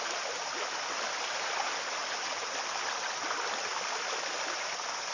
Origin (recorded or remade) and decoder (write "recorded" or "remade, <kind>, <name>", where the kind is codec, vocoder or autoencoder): recorded